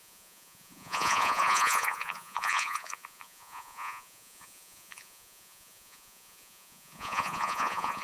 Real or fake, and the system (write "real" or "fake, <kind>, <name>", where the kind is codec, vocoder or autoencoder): fake, vocoder, Vocos